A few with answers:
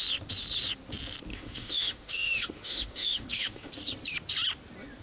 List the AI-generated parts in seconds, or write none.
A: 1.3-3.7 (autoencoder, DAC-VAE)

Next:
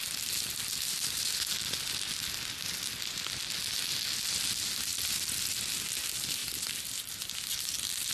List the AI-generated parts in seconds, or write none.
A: none

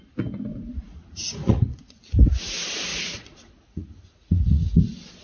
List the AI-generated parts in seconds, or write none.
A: 0.5-2.0 (vocoder, Vocos); 2.9-4.8

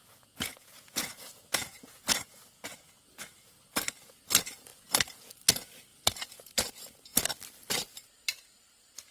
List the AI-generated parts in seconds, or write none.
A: 0.0-3.6 (vocoder, Vocos); 5.9-6.5

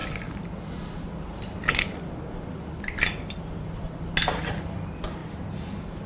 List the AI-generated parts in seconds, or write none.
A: none